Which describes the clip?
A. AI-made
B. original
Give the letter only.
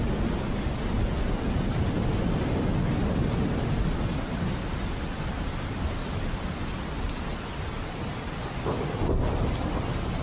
B